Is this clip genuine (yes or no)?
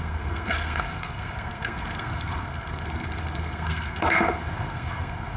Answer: no